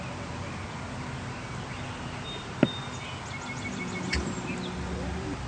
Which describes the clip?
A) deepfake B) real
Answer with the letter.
B